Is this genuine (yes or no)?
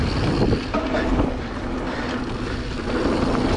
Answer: yes